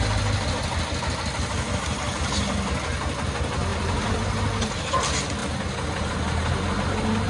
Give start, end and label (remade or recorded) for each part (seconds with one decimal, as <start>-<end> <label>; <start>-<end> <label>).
0.0-7.3 recorded